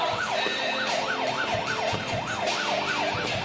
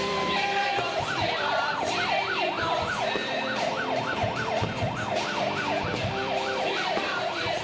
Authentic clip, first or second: first